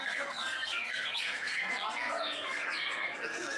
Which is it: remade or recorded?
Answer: remade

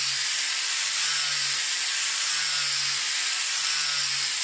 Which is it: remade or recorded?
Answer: recorded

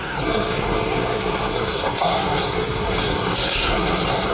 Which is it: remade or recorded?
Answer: remade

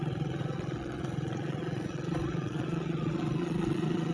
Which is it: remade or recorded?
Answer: remade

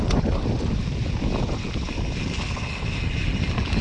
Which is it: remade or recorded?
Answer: recorded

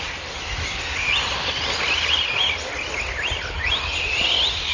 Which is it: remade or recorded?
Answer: recorded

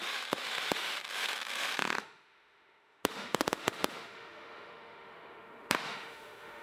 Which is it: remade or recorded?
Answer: remade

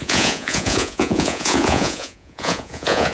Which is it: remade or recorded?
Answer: remade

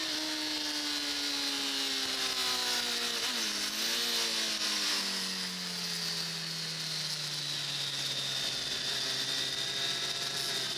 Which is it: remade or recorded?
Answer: recorded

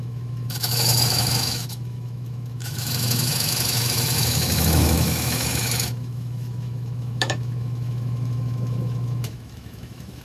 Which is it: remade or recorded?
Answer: remade